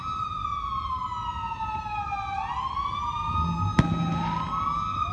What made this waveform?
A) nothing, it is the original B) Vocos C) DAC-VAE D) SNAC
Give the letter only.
A